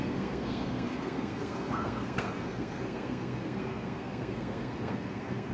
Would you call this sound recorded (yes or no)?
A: no